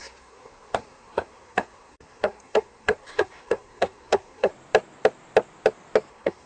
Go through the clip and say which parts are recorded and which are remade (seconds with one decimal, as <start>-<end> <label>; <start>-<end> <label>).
0.0-4.5 remade; 4.5-6.1 recorded; 6.1-6.5 remade